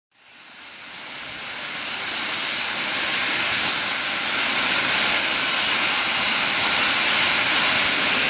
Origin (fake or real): real